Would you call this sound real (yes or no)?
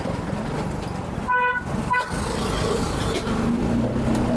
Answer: no